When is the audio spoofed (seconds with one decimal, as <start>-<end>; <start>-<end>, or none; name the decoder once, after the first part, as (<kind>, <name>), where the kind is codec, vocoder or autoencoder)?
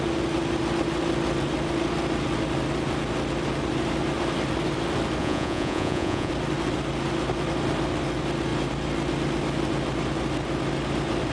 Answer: 5.2-6.3 (vocoder, Vocos)